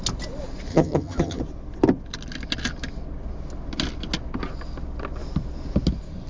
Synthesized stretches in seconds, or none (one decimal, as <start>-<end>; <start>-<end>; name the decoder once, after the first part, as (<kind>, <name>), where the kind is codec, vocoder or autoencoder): 0.7-1.4 (vocoder, HiFi-GAN)